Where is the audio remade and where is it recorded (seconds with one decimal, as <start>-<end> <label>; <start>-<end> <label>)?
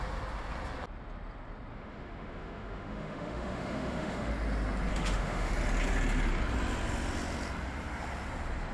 0.0-1.7 recorded; 1.7-4.3 remade; 4.3-4.9 recorded; 4.9-5.5 remade; 5.5-8.7 recorded